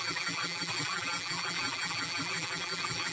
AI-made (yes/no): yes